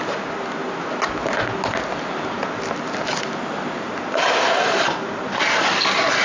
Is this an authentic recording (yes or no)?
yes